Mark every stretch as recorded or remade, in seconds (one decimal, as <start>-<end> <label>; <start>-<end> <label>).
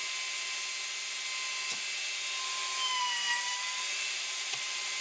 0.0-3.0 recorded; 3.0-5.0 remade